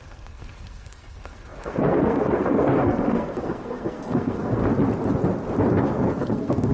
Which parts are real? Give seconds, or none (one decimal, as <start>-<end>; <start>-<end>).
4.6-5.7

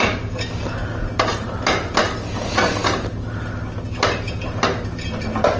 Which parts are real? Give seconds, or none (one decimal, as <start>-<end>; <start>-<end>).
0.0-5.6

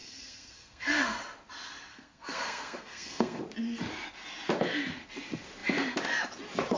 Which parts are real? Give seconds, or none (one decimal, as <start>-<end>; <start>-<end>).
1.2-1.9; 3.4-6.8

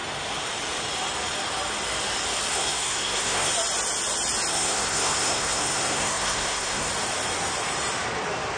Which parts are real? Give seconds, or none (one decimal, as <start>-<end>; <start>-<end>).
0.0-2.5; 3.5-4.5; 6.9-8.6

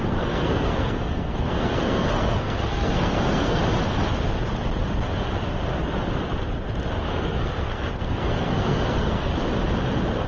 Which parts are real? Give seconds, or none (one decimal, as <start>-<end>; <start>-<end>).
3.6-7.1; 9.3-10.3

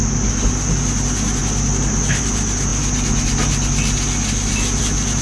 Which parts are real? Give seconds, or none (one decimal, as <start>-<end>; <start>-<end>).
0.0-5.2